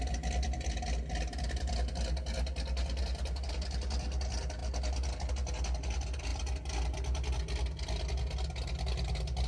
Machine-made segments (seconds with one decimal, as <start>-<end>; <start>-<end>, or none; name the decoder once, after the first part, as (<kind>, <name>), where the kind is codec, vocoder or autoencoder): none